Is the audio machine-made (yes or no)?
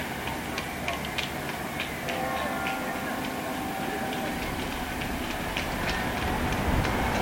no